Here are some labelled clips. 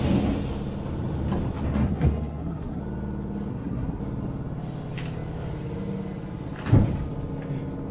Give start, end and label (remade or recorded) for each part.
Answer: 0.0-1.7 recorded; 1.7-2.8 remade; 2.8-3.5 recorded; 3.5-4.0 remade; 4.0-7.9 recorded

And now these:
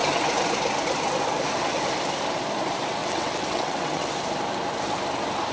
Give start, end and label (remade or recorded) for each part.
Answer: 0.0-3.0 recorded; 3.0-4.1 remade; 4.1-5.5 recorded

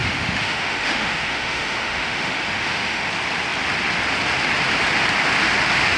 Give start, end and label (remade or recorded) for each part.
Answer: 0.0-3.1 remade; 3.1-6.0 recorded